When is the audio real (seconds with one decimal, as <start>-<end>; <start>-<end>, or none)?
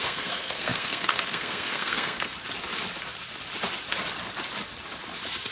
2.3-5.5